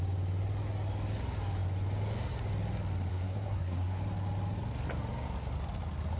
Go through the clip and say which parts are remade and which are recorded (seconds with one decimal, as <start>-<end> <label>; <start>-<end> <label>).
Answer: 0.0-3.1 recorded; 3.1-4.0 remade; 4.0-6.2 recorded